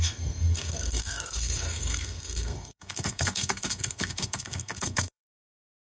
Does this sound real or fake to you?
fake